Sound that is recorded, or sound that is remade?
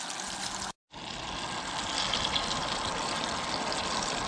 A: recorded